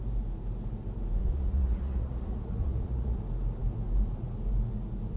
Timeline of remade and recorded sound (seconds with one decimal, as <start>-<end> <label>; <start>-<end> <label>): 0.0-1.2 recorded; 1.2-3.2 remade; 3.2-5.2 recorded

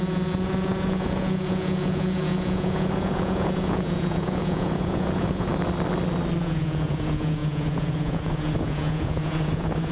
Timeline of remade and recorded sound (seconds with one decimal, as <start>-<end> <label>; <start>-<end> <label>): 0.0-5.5 remade; 5.5-6.4 recorded; 6.4-9.9 remade

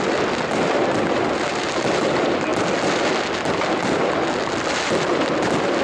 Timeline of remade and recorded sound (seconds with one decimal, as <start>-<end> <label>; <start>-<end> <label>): 0.0-5.8 recorded

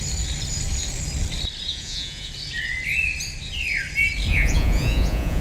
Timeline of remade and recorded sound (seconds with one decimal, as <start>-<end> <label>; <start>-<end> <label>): 0.0-1.7 recorded; 1.7-2.3 remade; 2.3-4.3 recorded; 4.3-5.4 remade

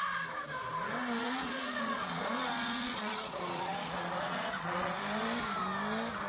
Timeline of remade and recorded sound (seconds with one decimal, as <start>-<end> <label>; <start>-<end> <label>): 0.0-1.2 recorded; 1.2-5.0 remade; 5.0-6.3 recorded

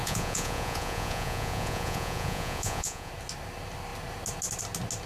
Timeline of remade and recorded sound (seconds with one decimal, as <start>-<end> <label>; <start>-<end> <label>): 0.0-3.1 remade; 3.1-5.1 recorded

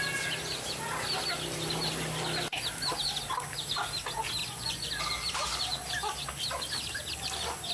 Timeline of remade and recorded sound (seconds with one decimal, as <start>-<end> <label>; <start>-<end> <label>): 0.0-4.4 recorded; 4.4-4.9 remade; 4.9-7.7 recorded

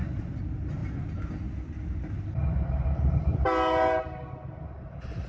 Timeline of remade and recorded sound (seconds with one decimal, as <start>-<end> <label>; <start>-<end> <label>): 0.0-5.3 recorded